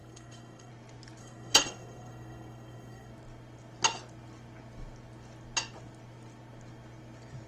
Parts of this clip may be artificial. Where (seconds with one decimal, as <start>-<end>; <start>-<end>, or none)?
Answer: 0.0-0.7; 1.2-3.1